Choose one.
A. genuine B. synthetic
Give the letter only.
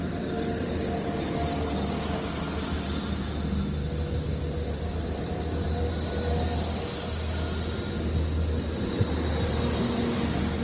A